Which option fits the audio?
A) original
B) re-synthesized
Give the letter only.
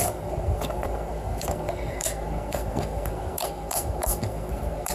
B